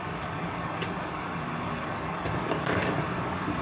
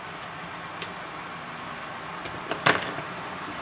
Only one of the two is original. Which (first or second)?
second